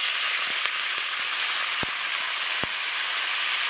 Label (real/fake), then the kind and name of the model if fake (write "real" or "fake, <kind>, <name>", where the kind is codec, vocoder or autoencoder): real